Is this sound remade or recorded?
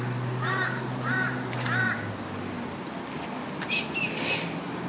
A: recorded